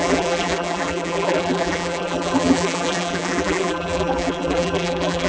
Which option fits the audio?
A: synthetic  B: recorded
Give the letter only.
A